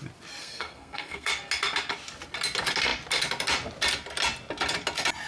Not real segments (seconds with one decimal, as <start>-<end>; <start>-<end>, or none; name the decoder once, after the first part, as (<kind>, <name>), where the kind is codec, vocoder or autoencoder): 0.4-1.3 (codec, SNAC)